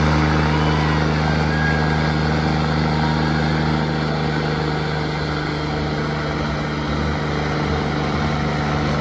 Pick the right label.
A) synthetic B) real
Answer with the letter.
B